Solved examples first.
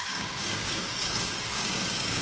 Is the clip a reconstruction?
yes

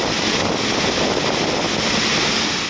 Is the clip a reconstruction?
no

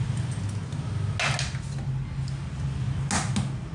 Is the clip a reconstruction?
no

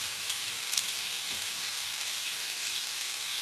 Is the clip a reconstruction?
yes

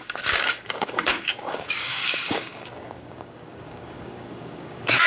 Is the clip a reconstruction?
yes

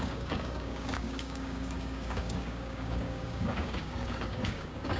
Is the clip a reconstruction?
yes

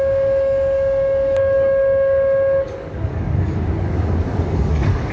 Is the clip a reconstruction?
yes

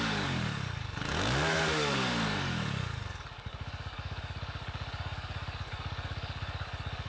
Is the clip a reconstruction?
yes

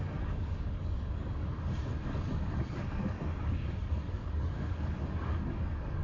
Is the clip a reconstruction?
yes